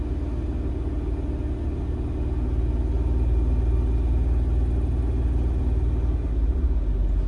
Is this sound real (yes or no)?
yes